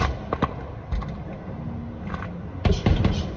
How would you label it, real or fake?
real